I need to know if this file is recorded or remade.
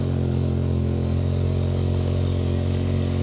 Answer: remade